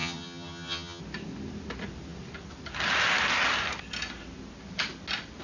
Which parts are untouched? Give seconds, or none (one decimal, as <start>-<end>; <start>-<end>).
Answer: 1.0-5.4